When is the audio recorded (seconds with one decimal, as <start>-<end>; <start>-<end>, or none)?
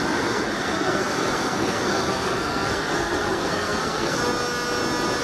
4.2-5.2